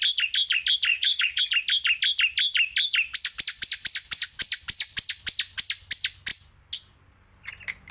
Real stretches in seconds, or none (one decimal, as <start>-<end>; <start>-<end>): 0.0-0.9; 1.4-7.9